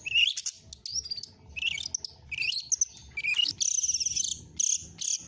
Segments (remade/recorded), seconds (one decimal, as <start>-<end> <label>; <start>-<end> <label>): 0.0-5.3 recorded